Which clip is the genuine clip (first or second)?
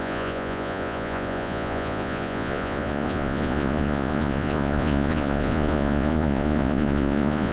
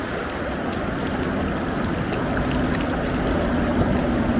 second